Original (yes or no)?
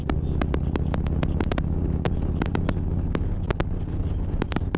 yes